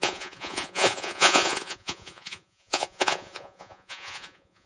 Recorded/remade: remade